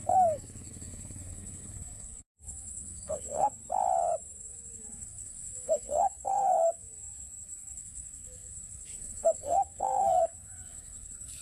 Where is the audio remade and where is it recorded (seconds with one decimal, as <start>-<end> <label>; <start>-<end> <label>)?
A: 0.0-3.6 remade; 3.6-4.4 recorded; 4.4-11.4 remade